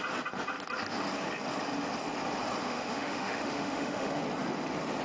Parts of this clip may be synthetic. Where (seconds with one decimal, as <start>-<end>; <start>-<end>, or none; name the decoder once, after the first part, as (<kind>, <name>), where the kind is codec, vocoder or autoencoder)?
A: 2.6-4.2 (autoencoder, DAC-VAE)